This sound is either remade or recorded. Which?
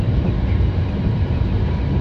remade